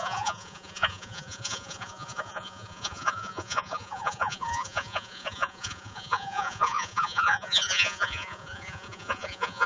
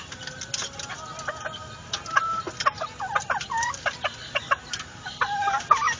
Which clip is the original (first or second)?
second